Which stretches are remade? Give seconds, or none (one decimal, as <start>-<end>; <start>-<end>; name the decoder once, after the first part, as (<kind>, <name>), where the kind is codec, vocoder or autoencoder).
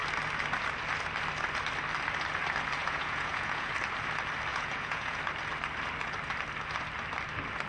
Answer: 2.8-3.7 (vocoder, Vocos); 4.5-5.2